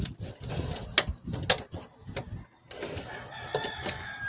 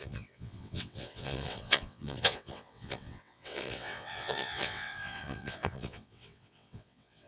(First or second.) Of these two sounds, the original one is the first